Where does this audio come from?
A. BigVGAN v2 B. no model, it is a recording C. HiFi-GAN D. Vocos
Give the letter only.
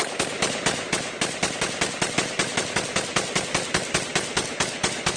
B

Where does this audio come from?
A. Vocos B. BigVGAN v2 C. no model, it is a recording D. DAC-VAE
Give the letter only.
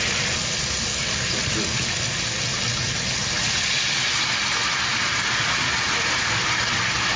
C